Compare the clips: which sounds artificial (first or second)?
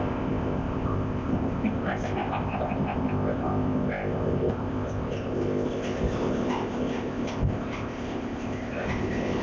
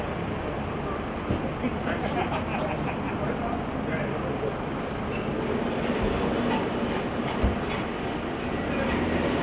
first